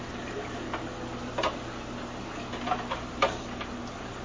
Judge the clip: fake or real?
real